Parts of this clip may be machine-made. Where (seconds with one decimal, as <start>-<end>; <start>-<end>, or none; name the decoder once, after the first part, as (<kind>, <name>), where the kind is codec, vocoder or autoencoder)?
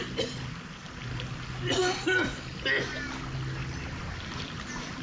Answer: none